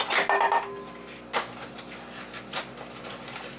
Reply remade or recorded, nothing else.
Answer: recorded